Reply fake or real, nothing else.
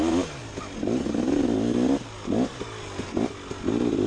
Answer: real